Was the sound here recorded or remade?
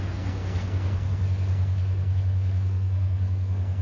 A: remade